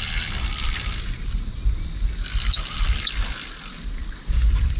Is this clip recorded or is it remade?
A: recorded